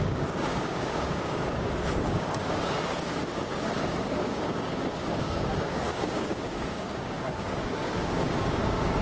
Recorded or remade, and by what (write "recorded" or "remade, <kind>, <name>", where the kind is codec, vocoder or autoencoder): remade, codec, DAC